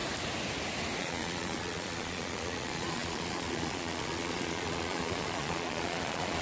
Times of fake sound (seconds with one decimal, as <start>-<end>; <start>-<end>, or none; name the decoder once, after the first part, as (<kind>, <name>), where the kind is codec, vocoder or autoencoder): 1.0-6.4 (vocoder, Vocos)